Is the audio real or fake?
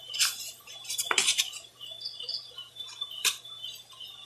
fake